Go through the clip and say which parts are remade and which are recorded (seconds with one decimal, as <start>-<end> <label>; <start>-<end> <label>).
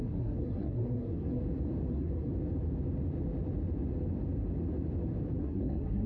0.0-1.4 remade; 1.4-1.9 recorded; 1.9-2.3 remade; 2.3-5.4 recorded; 5.4-6.1 remade